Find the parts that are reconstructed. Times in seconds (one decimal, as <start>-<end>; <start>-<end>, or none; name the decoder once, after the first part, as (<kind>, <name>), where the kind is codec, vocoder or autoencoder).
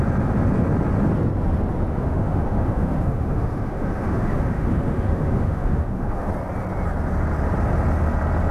1.9-6.3 (autoencoder, DAC-VAE)